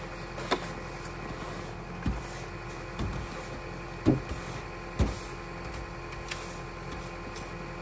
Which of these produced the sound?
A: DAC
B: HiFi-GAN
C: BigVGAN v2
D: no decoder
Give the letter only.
D